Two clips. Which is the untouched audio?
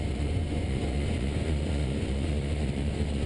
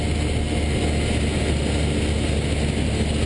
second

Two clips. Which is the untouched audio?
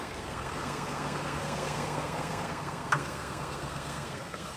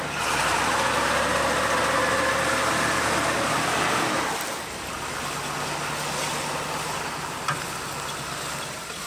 second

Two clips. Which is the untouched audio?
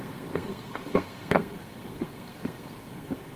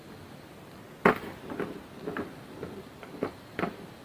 second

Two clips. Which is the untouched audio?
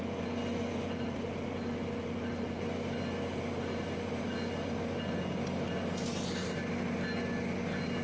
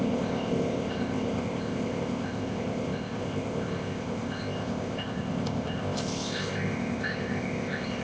first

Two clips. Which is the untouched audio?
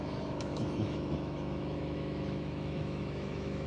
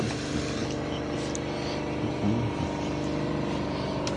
second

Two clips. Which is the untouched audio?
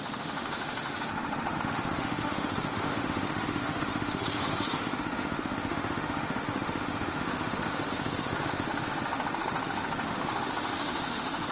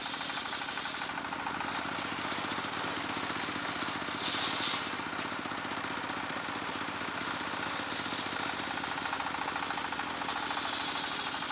second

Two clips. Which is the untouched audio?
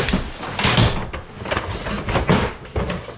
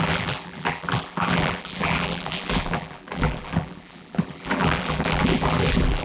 first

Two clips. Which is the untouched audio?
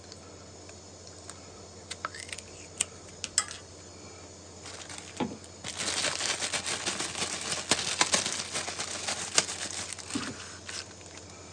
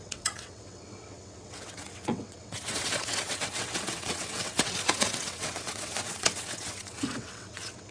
first